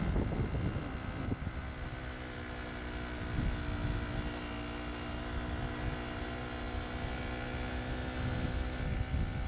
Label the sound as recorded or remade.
recorded